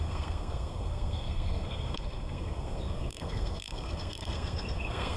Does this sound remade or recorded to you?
remade